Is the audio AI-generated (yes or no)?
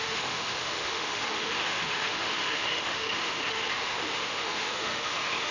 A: yes